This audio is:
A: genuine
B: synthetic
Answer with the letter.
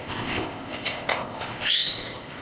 B